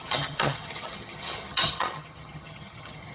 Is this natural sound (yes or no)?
no